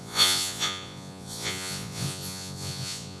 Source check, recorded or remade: remade